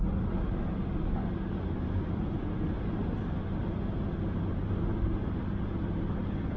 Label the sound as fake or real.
real